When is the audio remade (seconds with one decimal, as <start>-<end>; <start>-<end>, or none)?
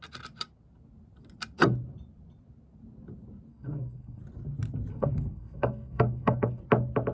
3.5-4.2; 4.9-6.6